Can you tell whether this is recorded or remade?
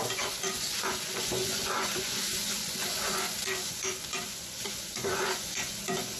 remade